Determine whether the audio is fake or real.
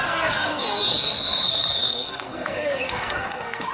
fake